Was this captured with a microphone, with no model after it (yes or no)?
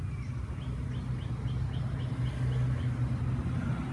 yes